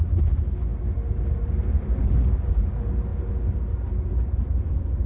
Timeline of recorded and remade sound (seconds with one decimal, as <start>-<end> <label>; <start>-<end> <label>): 0.0-5.1 recorded